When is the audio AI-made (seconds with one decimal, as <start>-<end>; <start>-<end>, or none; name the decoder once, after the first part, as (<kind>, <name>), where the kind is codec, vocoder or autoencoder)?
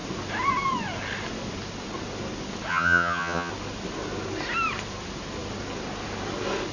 2.7-3.5 (vocoder, HiFi-GAN)